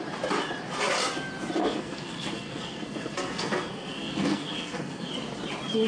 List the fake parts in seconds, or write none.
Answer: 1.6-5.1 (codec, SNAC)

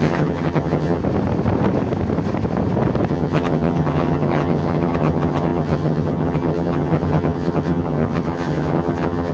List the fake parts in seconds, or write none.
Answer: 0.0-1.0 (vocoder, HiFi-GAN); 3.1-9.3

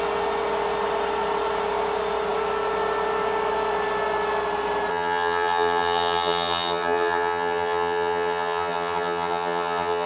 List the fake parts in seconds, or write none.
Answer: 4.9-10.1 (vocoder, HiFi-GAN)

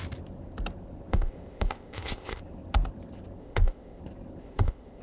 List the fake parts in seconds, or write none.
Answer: 1.1-2.4 (codec, ZipCodec); 3.4-4.0; 4.4-5.0